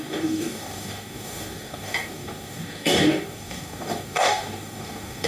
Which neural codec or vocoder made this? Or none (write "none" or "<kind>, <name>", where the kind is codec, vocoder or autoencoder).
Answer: codec, DAC